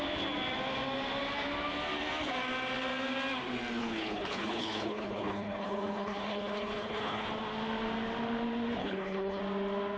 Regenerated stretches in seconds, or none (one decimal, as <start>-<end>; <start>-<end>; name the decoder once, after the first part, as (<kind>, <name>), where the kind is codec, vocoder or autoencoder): 3.8-7.3 (codec, HILCodec); 8.8-9.4